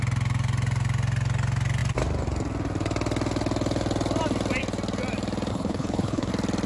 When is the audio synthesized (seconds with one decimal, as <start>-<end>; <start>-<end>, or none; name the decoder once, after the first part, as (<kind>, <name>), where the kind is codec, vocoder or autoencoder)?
5.5-6.3 (codec, HILCodec)